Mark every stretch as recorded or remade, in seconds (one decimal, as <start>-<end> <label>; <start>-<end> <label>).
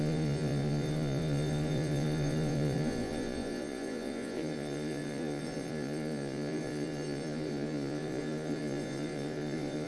0.0-9.9 remade